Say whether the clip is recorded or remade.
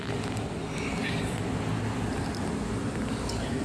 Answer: recorded